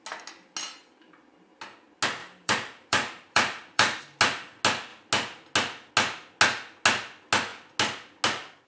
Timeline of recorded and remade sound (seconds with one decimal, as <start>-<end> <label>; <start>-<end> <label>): 0.0-2.2 recorded; 2.2-4.0 remade; 4.0-8.7 recorded